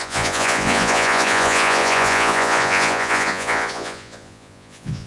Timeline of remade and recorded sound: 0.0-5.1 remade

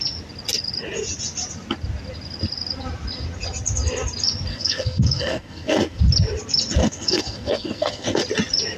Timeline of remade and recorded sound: 0.0-4.5 recorded; 4.5-6.0 remade; 6.0-6.8 recorded; 6.8-8.2 remade; 8.2-8.8 recorded

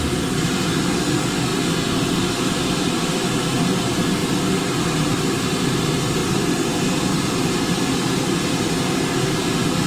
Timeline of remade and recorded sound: 0.0-9.9 recorded

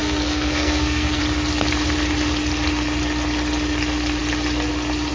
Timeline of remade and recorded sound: 0.0-1.2 remade; 1.2-5.1 recorded

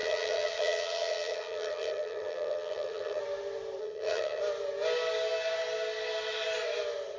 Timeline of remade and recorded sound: 0.0-3.2 remade; 3.2-3.8 recorded; 3.8-4.4 remade; 4.4-7.2 recorded

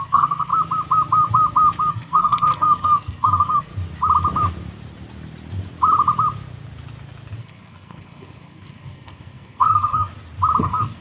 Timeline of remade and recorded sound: 0.0-0.5 remade; 0.5-1.9 recorded; 1.9-3.7 remade; 3.7-7.4 recorded; 7.4-10.1 remade; 10.1-10.6 recorded; 10.6-11.0 remade

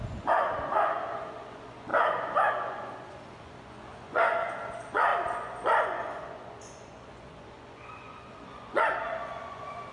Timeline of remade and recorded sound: 0.0-9.9 remade

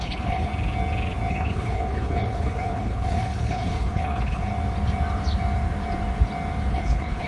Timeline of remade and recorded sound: 0.0-0.5 remade; 0.5-1.3 recorded; 1.3-4.5 remade; 4.5-6.7 recorded; 6.7-7.3 remade